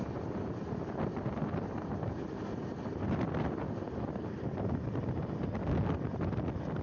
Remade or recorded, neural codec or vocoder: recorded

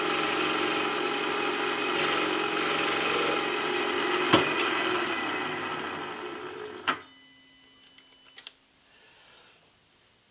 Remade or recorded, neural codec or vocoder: recorded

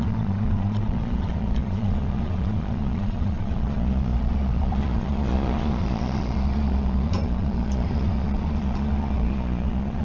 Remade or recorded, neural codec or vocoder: remade, vocoder, Vocos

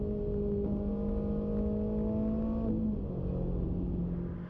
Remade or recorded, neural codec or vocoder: recorded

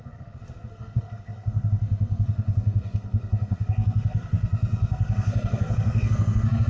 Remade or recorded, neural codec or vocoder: remade, codec, SNAC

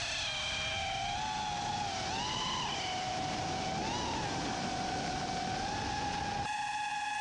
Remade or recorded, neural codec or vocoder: recorded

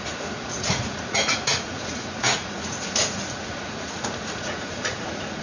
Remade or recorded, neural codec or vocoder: remade, vocoder, Vocos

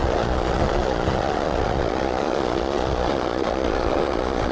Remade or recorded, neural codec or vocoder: remade, vocoder, Vocos